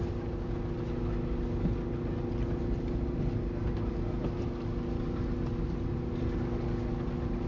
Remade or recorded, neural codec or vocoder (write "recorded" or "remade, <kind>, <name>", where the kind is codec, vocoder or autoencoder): recorded